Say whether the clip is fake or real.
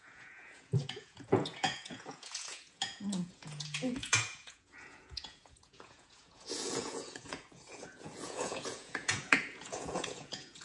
fake